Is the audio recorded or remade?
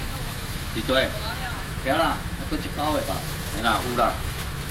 remade